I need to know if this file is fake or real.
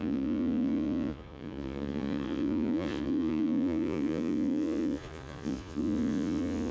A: fake